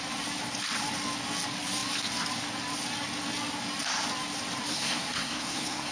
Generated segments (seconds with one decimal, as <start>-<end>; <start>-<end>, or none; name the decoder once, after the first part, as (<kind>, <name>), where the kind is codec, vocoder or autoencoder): 4.7-5.9 (codec, SNAC)